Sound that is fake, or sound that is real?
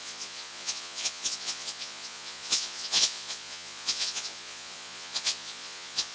fake